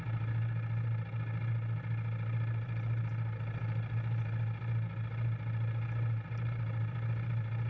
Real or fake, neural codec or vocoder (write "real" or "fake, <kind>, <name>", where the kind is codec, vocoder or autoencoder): real